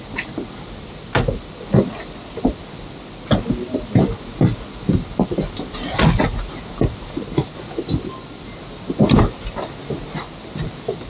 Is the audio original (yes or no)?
yes